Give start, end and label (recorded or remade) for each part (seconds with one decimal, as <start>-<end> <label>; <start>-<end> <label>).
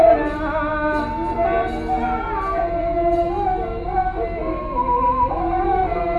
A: 0.0-6.2 recorded